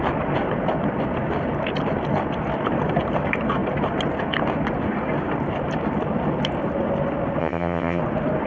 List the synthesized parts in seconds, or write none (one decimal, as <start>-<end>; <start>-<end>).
7.4-8.0